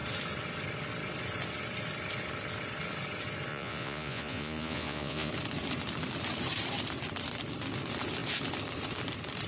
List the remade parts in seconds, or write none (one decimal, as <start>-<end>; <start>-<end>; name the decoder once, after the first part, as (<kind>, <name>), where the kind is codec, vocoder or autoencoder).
3.5-5.3 (vocoder, Vocos)